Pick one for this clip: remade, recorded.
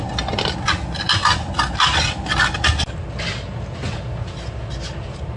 recorded